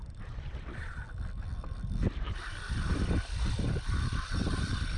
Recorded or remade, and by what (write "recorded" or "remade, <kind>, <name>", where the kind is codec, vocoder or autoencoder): recorded